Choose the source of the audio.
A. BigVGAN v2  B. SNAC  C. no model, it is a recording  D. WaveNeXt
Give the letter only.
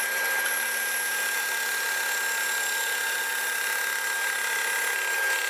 C